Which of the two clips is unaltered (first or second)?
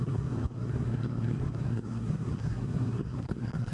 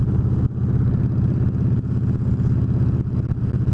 second